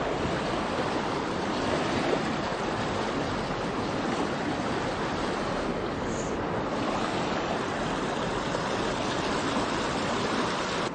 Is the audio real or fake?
real